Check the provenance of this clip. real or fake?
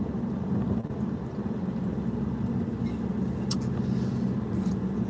real